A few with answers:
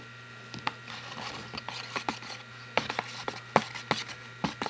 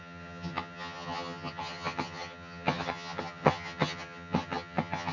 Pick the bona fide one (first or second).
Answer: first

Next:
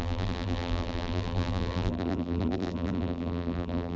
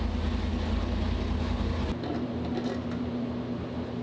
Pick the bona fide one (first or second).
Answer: second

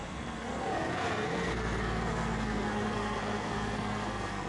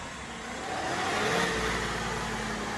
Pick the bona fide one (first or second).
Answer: second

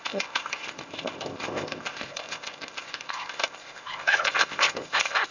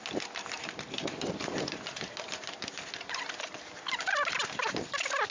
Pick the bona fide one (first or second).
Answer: second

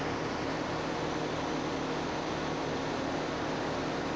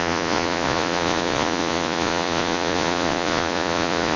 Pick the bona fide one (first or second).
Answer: first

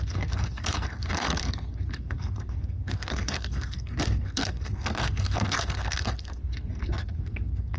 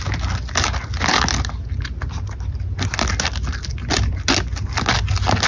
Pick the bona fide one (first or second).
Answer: second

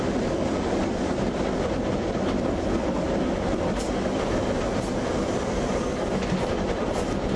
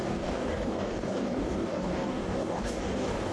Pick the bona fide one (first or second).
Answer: first